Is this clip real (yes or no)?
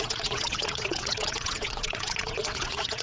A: no